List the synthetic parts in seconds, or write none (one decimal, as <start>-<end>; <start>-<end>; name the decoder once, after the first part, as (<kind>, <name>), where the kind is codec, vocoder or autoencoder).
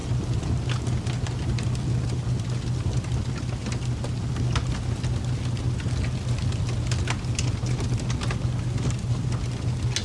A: none